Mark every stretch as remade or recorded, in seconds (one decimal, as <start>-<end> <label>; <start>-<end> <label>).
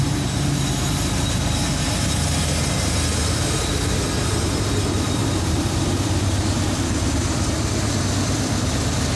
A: 0.0-5.2 recorded; 5.2-8.0 remade; 8.0-9.2 recorded